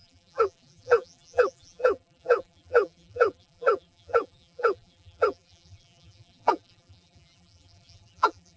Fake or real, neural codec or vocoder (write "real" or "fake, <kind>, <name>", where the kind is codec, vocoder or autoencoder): fake, vocoder, BigVGAN v2